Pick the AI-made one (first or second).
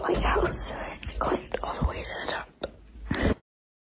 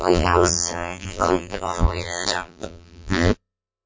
second